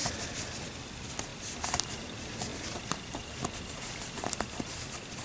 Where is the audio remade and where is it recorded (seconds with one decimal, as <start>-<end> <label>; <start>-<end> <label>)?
0.0-2.5 recorded; 2.5-3.3 remade; 3.3-5.2 recorded